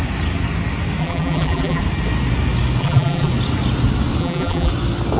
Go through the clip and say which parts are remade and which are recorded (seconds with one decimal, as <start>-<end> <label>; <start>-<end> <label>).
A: 0.0-1.0 recorded; 1.0-1.8 remade; 1.8-2.8 recorded; 2.8-3.3 remade; 3.3-4.2 recorded; 4.2-4.7 remade; 4.7-5.2 recorded